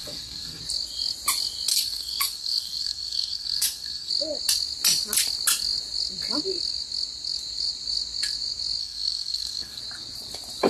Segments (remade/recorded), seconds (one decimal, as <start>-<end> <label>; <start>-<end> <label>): 0.0-0.6 remade; 0.6-1.7 recorded; 1.7-4.1 remade; 4.1-8.8 recorded; 8.8-9.8 remade; 9.8-10.7 recorded